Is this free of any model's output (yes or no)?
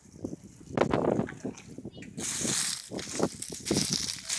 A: yes